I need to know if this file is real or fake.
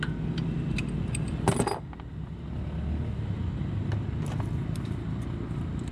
real